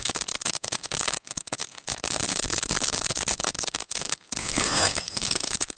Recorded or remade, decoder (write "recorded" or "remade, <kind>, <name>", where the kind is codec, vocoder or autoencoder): remade, codec, SNAC